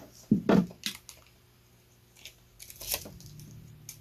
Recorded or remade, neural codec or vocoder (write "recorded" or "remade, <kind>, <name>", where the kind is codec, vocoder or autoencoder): recorded